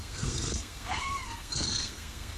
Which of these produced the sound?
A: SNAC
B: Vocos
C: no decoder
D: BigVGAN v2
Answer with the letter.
A